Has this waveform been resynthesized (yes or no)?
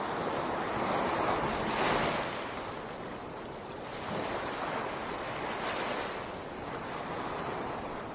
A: no